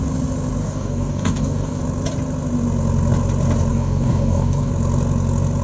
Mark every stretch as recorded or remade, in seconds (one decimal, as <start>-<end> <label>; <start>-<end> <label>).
0.0-0.6 recorded; 0.6-1.8 remade; 1.8-3.7 recorded; 3.7-4.7 remade; 4.7-5.6 recorded

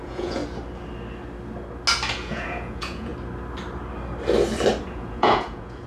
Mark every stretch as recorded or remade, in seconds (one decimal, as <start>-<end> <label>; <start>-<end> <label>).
0.0-0.4 remade; 0.4-2.1 recorded; 2.1-3.1 remade; 3.1-4.8 recorded; 4.8-5.9 remade

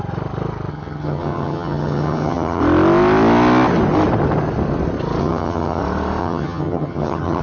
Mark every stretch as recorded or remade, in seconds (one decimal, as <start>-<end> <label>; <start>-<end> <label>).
0.0-0.7 recorded; 0.7-2.6 remade; 2.6-5.2 recorded; 5.2-5.8 remade; 5.8-6.2 recorded; 6.2-7.4 remade

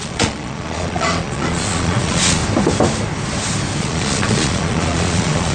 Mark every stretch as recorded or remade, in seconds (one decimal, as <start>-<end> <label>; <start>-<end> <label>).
0.0-2.4 remade; 2.4-3.8 recorded; 3.8-5.5 remade

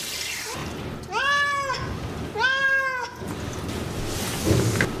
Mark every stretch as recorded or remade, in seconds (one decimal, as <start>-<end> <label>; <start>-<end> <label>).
0.0-5.0 recorded

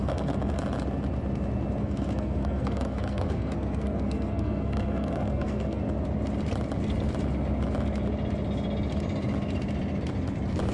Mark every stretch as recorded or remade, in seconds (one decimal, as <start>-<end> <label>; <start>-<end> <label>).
0.0-0.6 remade; 0.6-1.8 recorded; 1.8-5.8 remade; 5.8-10.7 recorded

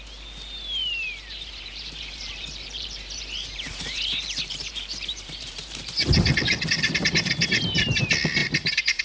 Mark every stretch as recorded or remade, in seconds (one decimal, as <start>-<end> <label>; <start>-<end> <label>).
0.0-0.8 recorded; 0.8-5.9 remade; 5.9-8.4 recorded; 8.4-9.0 remade

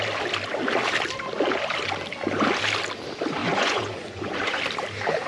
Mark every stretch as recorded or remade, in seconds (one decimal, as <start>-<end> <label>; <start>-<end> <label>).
0.0-3.4 recorded; 3.4-4.6 remade; 4.6-5.3 recorded